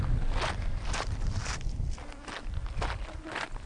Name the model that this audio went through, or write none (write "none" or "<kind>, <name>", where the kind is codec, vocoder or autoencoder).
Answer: none